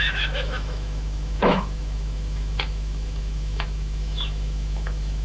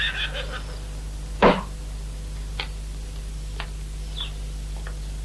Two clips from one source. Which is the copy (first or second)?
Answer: first